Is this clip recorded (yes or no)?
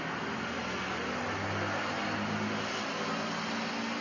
yes